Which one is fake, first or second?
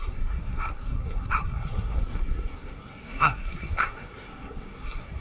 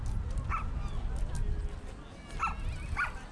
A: first